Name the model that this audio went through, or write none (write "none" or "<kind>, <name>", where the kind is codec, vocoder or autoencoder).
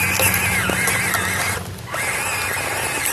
none